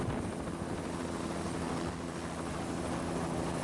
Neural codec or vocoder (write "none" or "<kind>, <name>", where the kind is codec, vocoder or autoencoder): none